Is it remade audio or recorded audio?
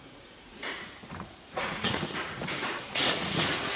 remade